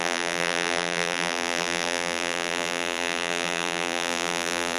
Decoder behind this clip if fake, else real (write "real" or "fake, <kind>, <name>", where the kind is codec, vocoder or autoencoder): fake, vocoder, BigVGAN v2